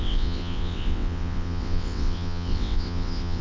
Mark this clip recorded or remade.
remade